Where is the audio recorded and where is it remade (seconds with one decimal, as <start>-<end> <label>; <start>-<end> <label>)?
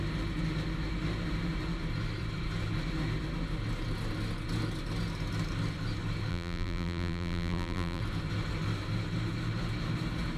0.0-6.3 recorded; 6.3-8.0 remade; 8.0-10.4 recorded